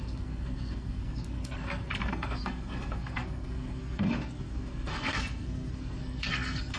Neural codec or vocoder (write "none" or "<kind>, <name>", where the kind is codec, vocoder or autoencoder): codec, SNAC